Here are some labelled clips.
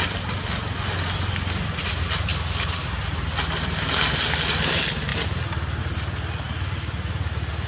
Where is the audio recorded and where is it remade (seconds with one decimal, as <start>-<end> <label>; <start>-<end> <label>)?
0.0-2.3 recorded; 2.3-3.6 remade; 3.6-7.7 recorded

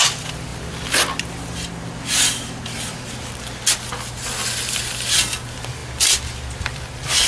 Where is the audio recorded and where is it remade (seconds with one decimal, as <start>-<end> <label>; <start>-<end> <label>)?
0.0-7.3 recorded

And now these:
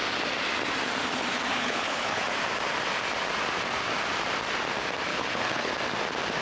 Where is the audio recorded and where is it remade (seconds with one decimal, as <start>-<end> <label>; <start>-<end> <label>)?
0.0-1.5 recorded; 1.5-2.2 remade; 2.2-5.1 recorded; 5.1-5.7 remade; 5.7-6.4 recorded